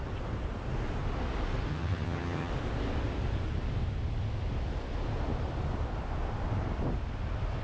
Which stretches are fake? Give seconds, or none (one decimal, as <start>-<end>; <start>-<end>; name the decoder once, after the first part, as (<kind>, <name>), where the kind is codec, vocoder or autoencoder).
1.7-2.5 (vocoder, HiFi-GAN)